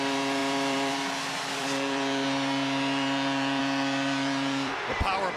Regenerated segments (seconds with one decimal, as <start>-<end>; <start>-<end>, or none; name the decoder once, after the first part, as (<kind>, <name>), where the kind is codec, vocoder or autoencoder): 0.0-5.4 (vocoder, BigVGAN v2)